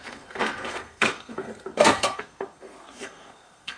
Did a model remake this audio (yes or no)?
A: yes